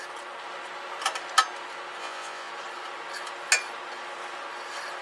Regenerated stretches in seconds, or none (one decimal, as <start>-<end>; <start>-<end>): 2.0-2.5

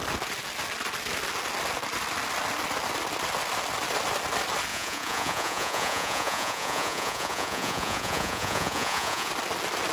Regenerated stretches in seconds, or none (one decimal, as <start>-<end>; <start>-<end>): 4.7-9.3

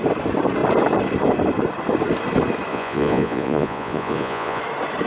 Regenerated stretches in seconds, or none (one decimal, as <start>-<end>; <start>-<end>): 2.7-4.6

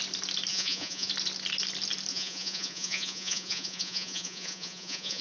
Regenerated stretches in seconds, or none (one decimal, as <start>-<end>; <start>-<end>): 0.5-1.1; 2.1-5.2

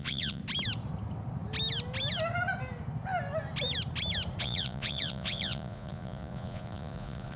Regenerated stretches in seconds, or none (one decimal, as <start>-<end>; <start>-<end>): 0.0-0.4; 4.4-7.4

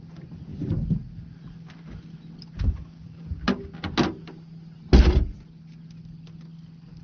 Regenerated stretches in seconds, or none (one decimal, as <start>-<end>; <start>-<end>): none

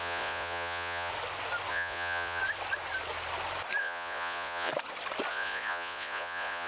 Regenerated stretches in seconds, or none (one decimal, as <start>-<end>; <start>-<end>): 0.0-1.1; 1.7-2.4; 3.8-4.7; 5.3-6.7

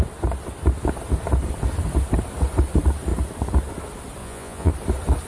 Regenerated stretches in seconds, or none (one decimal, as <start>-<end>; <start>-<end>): 4.2-4.7